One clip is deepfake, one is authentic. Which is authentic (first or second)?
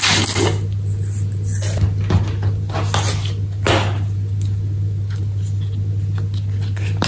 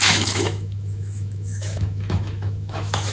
first